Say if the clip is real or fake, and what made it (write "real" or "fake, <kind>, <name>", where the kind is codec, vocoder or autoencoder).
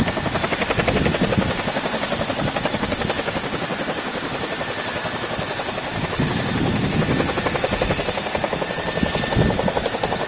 real